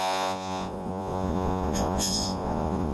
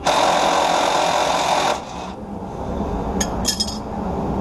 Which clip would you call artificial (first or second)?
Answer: first